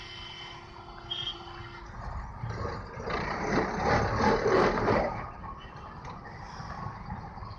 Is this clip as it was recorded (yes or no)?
yes